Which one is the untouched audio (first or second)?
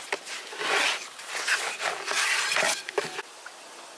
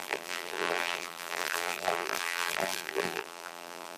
first